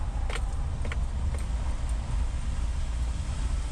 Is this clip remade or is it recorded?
recorded